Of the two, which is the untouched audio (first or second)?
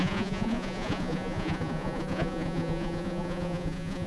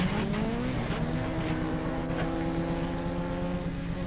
second